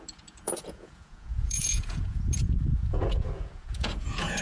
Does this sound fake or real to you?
fake